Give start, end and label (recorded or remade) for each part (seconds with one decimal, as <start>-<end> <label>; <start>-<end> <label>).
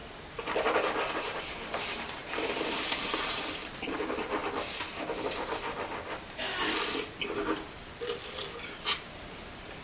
0.0-1.1 recorded; 1.1-4.4 remade; 4.4-8.6 recorded; 8.6-9.8 remade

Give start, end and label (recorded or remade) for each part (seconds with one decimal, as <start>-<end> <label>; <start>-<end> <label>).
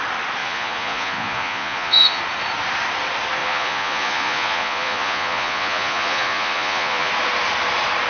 0.0-0.4 recorded; 0.4-2.2 remade; 2.2-3.4 recorded; 3.4-7.1 remade; 7.1-8.1 recorded